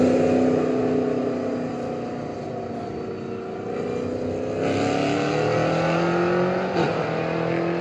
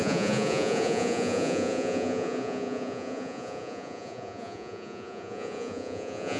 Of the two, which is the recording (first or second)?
first